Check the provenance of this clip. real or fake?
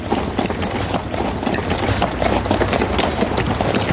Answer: real